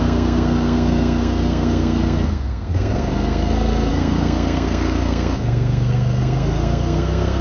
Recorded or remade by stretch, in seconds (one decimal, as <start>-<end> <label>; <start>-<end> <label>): 0.0-7.4 remade